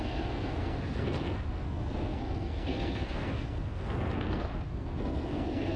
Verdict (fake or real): fake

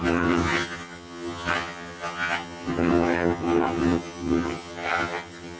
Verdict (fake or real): fake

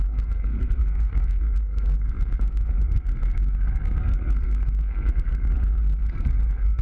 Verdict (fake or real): fake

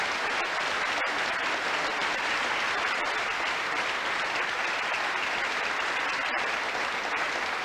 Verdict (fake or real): real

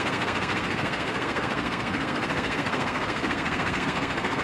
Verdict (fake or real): fake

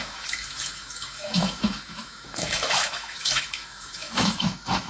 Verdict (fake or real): fake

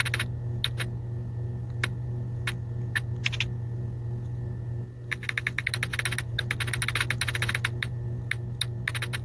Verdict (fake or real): real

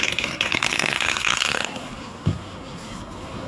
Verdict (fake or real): fake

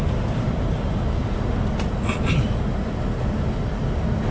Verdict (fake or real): real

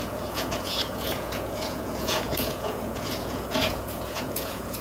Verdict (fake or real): fake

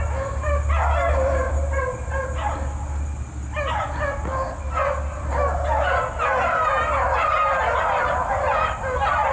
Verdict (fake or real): real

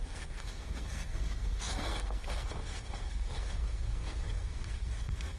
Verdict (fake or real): fake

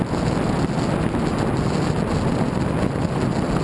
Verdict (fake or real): real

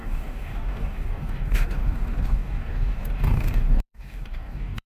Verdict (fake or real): fake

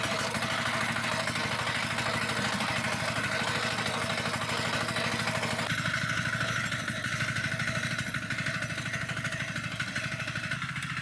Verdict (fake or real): real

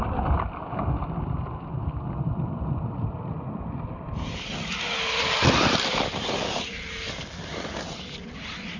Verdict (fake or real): real